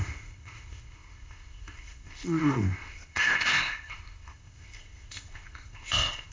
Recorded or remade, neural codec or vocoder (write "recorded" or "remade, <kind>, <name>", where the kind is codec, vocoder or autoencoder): remade, codec, ZipCodec